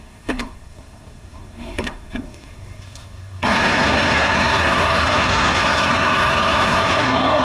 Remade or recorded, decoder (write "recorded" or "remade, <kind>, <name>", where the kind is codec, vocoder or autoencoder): remade, codec, SNAC